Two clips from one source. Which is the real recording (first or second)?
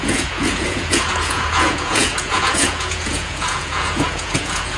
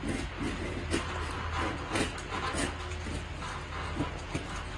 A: second